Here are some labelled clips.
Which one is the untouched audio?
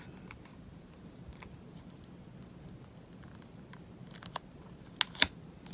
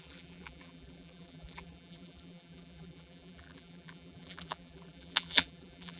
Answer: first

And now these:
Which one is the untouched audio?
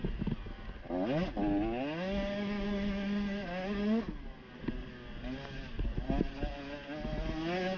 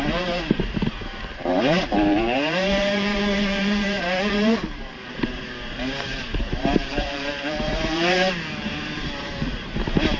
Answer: first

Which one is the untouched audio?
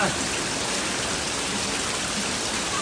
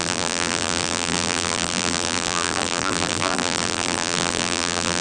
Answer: first